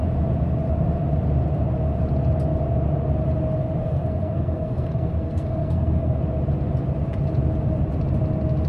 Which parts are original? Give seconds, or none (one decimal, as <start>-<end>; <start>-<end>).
0.0-3.8; 6.2-8.7